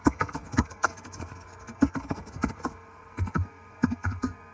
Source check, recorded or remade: remade